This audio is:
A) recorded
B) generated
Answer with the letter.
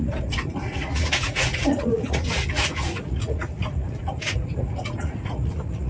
B